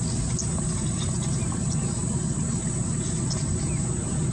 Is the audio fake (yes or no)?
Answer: no